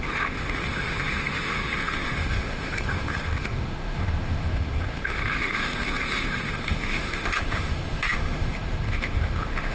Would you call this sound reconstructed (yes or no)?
yes